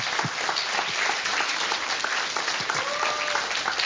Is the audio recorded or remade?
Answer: recorded